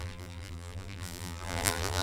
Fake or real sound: fake